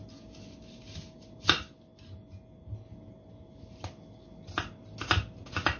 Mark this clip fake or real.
real